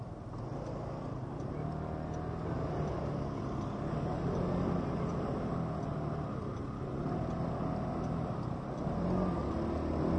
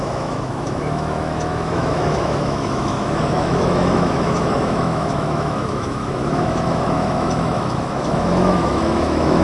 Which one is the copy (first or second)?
second